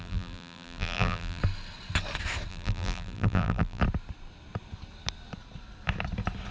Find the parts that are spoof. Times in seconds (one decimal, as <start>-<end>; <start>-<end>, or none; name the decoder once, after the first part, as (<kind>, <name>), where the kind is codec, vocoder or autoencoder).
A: 0.0-1.4 (vocoder, BigVGAN v2); 2.5-3.8